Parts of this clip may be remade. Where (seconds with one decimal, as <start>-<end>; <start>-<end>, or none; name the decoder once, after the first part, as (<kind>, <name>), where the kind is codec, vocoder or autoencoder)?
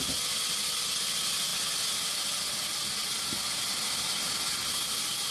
none